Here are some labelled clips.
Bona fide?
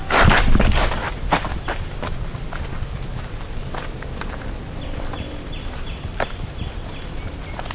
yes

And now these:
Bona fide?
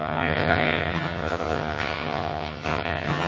no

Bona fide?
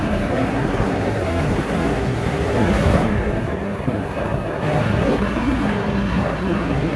no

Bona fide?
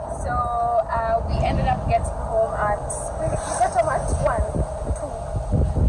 yes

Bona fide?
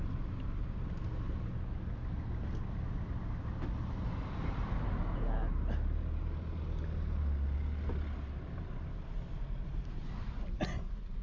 yes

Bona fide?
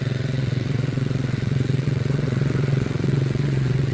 no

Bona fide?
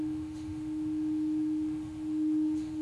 no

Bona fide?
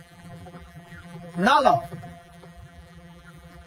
no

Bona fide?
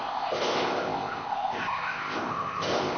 no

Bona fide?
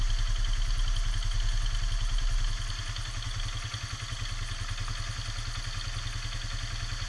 yes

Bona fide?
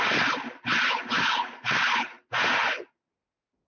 yes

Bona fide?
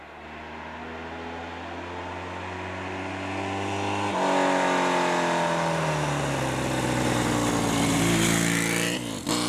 yes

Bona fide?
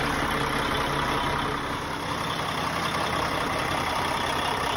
yes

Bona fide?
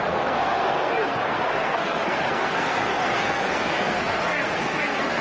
no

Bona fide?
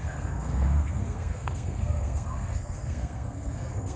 no